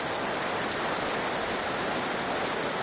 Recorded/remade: recorded